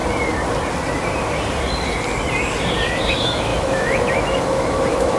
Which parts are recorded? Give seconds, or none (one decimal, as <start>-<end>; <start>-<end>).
0.0-3.1